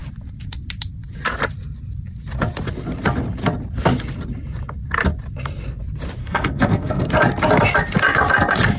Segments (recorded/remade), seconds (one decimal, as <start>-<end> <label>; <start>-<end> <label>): 0.0-6.2 recorded; 6.2-7.1 remade; 7.1-8.8 recorded